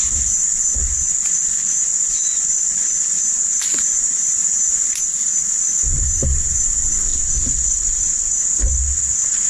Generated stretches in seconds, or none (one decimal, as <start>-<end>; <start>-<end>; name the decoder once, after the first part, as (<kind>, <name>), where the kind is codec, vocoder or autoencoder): 0.0-0.8 (vocoder, BigVGAN v2); 3.8-7.1